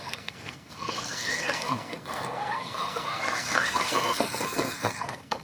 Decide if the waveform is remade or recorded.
remade